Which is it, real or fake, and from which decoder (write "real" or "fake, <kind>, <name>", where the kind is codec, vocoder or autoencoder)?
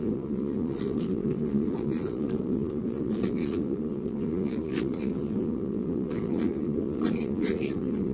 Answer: fake, vocoder, Vocos